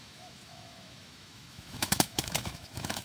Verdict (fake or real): fake